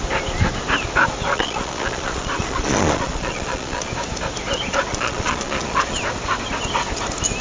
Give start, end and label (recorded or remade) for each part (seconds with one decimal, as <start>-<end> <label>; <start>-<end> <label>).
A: 0.0-1.3 recorded; 1.3-3.9 remade; 3.9-4.9 recorded; 4.9-6.0 remade; 6.0-7.4 recorded